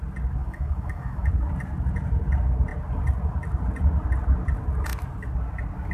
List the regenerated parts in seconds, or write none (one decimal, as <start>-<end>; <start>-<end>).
0.4-1.3